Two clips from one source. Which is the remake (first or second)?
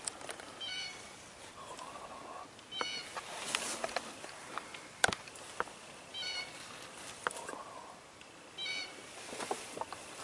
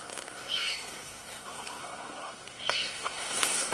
second